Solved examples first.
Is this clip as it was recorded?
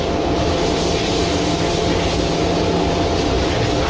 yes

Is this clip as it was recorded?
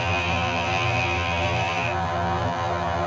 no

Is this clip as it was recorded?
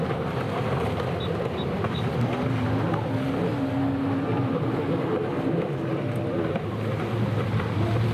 yes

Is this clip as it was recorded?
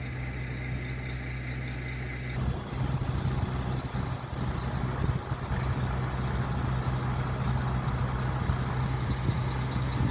yes